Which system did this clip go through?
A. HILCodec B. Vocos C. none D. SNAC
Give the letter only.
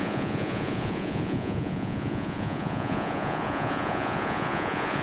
B